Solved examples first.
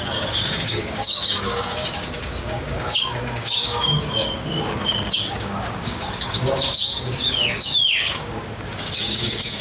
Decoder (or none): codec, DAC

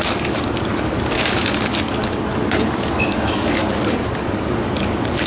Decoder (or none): codec, DAC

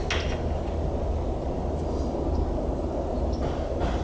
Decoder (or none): none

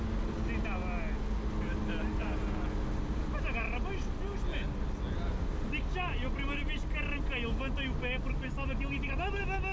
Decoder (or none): none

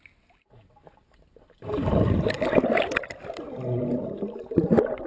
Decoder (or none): none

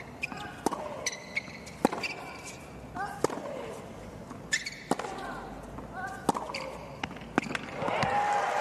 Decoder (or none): none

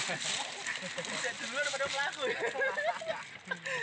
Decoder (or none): none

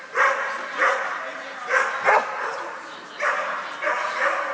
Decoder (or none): none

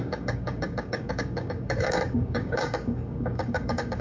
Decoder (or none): codec, DAC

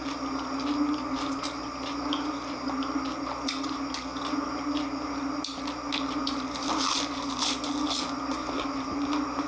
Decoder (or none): none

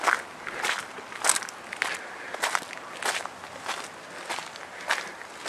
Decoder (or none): none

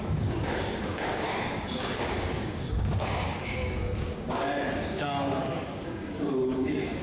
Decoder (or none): codec, DAC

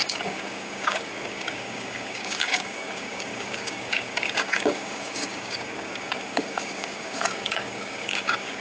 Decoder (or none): codec, DAC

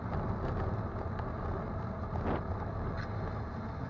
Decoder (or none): none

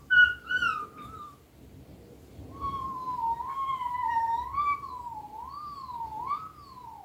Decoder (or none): none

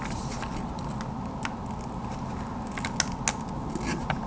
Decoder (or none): none